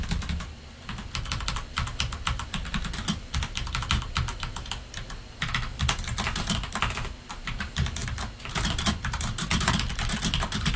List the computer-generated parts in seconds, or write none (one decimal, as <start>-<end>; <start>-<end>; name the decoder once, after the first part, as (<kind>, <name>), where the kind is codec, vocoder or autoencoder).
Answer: none